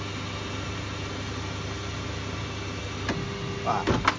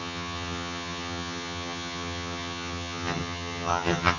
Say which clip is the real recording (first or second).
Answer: first